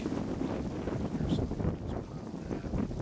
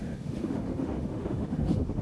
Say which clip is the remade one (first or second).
second